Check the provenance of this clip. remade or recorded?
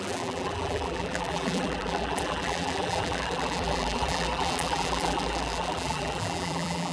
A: remade